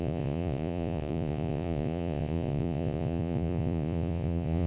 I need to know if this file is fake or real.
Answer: fake